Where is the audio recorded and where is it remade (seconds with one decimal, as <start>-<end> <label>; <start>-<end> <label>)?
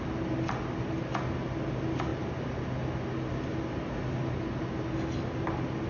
0.0-5.9 recorded